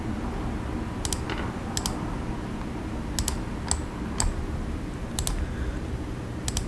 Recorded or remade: recorded